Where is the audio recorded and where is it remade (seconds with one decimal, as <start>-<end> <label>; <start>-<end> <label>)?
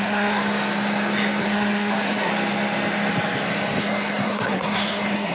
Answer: 0.0-0.4 remade; 0.4-1.4 recorded; 1.4-2.3 remade; 2.3-3.8 recorded; 3.8-5.3 remade